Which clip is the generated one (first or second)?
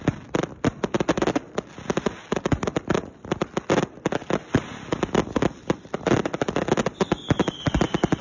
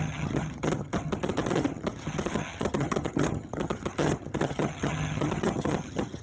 second